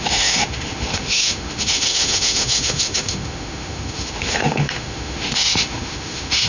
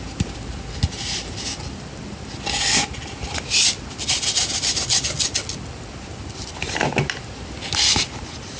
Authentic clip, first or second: second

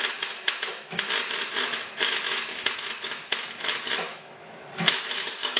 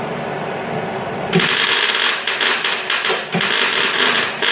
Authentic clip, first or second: second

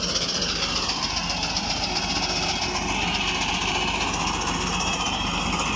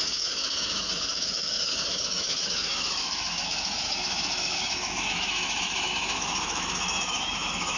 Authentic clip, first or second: first